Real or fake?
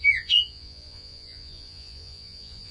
fake